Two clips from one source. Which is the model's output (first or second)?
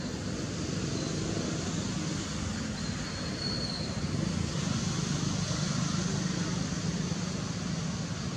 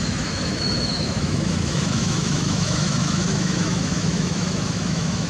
second